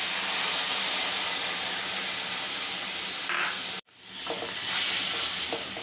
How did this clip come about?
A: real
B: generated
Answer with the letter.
A